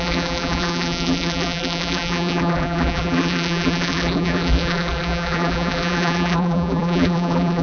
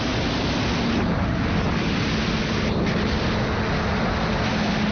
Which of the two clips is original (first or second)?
second